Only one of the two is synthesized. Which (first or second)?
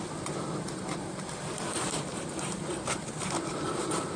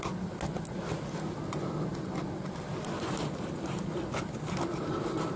first